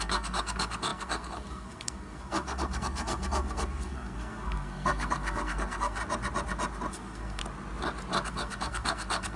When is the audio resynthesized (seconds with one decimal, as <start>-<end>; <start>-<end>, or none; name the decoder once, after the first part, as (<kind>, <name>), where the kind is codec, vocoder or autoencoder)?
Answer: 0.0-6.0 (codec, SNAC); 6.9-7.4; 8.3-9.4